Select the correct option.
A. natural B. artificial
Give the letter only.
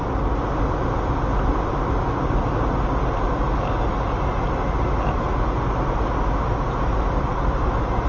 A